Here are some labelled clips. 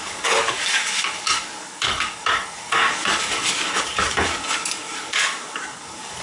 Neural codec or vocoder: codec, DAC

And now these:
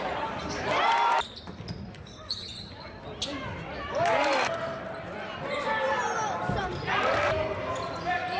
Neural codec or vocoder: none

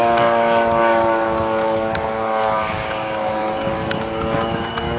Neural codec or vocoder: codec, DAC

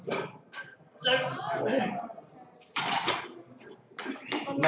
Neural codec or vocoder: none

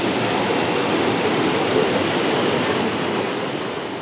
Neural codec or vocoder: none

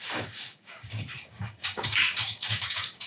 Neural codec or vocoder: codec, DAC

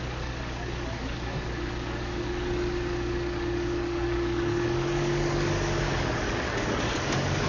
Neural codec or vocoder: codec, DAC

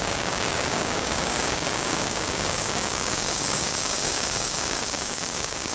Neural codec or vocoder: codec, DAC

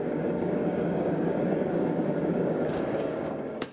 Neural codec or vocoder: codec, DAC